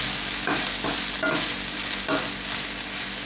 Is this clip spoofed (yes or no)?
no